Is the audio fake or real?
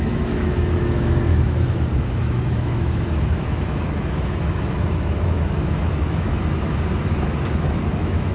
fake